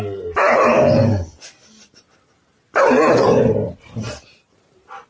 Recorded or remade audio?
recorded